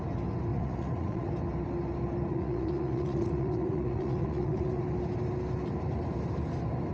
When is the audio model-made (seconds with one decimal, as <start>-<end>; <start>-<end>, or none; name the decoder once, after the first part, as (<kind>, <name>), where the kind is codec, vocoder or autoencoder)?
0.5-1.3 (vocoder, Vocos); 2.3-4.8

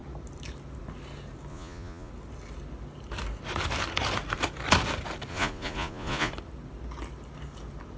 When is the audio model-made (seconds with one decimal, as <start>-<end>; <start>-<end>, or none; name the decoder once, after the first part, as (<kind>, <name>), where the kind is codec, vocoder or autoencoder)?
1.5-2.1 (vocoder, Vocos); 5.3-6.3

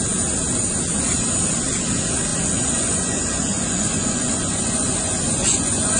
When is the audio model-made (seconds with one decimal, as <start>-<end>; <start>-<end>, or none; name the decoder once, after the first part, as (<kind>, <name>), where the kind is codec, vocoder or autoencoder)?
2.3-6.0 (vocoder, Vocos)

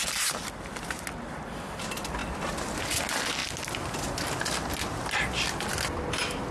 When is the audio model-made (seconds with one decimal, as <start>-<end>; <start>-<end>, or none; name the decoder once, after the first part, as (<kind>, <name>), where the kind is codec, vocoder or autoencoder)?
none

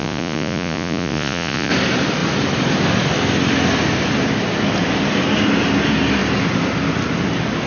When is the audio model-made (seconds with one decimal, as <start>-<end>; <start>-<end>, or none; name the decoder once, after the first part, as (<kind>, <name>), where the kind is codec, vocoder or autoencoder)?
0.0-1.7 (vocoder, Vocos)